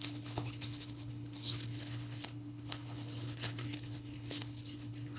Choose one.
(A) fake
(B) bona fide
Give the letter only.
A